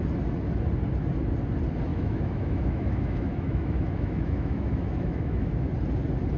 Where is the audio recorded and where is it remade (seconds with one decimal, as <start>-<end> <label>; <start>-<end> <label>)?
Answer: 0.0-1.9 recorded; 1.9-5.7 remade; 5.7-6.4 recorded